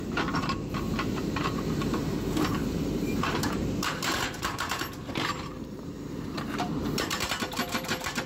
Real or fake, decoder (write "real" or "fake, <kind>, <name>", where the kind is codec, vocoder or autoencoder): fake, vocoder, BigVGAN v2